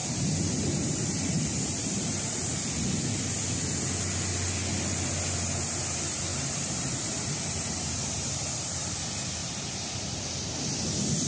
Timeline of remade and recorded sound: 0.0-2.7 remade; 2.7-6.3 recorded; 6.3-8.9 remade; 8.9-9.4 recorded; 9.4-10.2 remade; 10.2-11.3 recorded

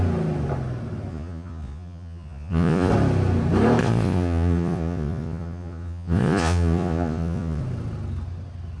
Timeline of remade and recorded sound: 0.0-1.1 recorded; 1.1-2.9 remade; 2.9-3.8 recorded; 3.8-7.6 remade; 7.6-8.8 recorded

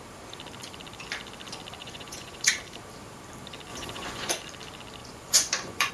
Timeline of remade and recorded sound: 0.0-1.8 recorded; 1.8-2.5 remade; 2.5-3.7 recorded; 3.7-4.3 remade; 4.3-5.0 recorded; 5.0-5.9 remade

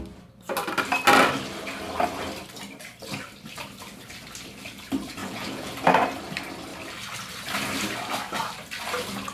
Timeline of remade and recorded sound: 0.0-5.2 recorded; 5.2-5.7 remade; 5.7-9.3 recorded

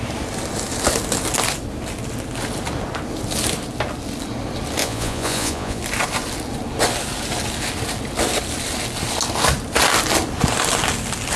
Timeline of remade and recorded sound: 0.0-4.8 recorded; 4.8-5.8 remade; 5.8-11.4 recorded

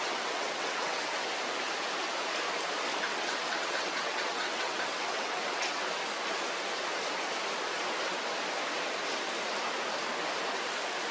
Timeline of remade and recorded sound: 0.0-1.2 remade; 1.2-3.0 recorded; 3.0-5.8 remade; 5.8-11.1 recorded

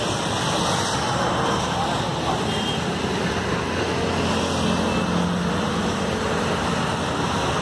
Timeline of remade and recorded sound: 0.0-7.6 recorded